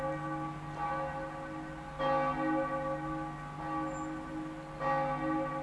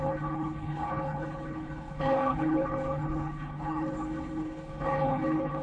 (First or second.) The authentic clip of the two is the first